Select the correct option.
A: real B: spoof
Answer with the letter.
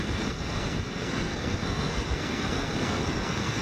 B